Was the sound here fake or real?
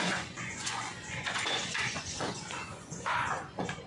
fake